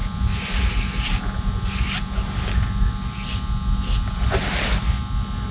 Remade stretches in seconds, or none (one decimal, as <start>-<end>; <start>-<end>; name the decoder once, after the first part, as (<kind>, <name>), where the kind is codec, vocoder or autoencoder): none